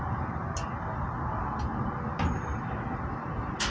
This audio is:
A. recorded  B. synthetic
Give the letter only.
A